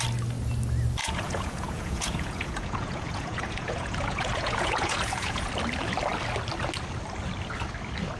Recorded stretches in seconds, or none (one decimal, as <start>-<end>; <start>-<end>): 0.0-1.0; 5.5-8.2